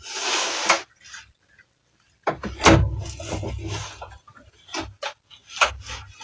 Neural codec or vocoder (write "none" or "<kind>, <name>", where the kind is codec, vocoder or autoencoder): none